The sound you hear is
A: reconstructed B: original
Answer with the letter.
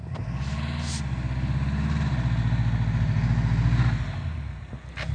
B